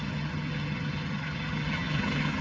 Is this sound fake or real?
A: fake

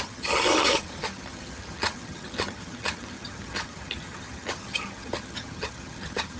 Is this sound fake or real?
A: fake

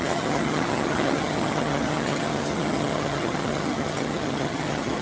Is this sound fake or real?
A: fake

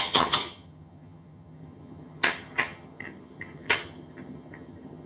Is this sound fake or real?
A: fake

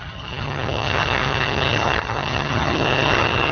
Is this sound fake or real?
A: fake